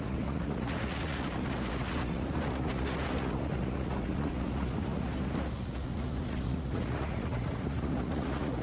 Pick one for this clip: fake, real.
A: fake